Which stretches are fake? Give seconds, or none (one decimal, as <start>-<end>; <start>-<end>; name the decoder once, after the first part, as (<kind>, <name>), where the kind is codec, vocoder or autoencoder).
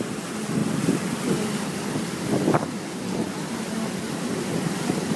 none